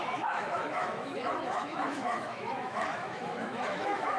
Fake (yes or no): yes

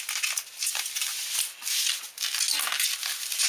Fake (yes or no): no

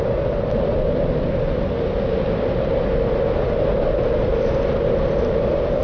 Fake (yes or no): no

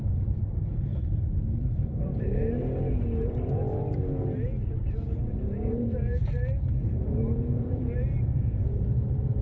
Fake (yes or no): yes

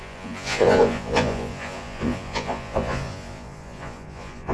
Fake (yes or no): yes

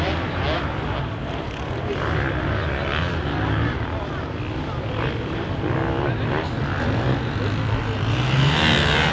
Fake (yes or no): no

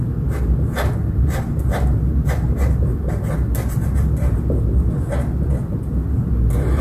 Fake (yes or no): no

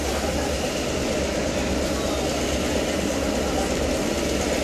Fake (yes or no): no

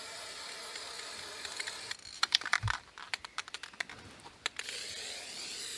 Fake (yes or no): no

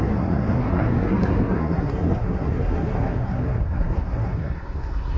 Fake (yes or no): yes